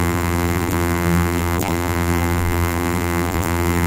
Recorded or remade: remade